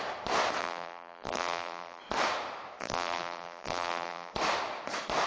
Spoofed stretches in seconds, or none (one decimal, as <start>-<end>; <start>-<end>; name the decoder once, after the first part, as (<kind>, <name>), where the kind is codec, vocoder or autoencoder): 0.6-2.0 (vocoder, BigVGAN v2); 2.8-4.3